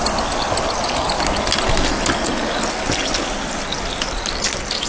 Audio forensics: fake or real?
real